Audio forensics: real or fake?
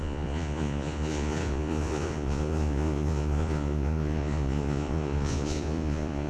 fake